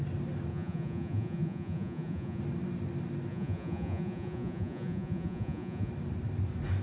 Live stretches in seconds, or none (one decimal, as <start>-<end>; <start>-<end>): 0.0-0.5; 2.4-3.3; 5.9-6.8